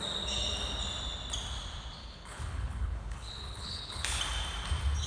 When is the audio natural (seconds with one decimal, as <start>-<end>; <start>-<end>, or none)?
0.0-2.0; 4.2-5.1

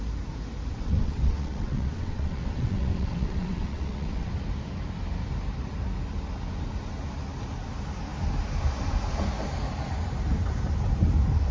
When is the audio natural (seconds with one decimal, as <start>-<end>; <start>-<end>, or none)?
0.0-0.7; 4.3-11.5